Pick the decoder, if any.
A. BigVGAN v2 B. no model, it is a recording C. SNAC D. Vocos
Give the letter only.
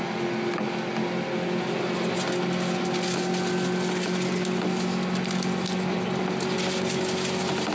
B